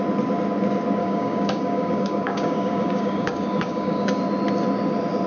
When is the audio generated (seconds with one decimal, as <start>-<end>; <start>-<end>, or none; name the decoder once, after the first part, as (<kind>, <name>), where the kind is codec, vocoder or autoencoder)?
1.0-4.2 (codec, DAC)